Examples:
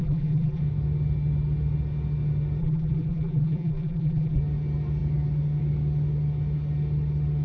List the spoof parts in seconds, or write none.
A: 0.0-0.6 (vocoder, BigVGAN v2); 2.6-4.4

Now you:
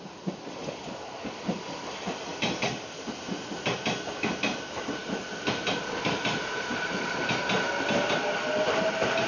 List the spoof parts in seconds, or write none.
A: 5.0-7.1 (vocoder, BigVGAN v2)

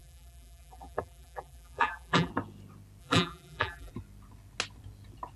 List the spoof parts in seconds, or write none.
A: 0.0-2.3 (vocoder, BigVGAN v2); 3.0-3.9

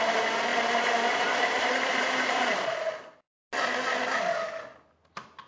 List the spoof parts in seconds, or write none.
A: 0.5-2.7 (vocoder, BigVGAN v2)